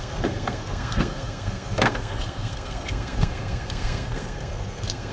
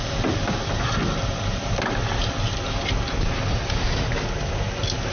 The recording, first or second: second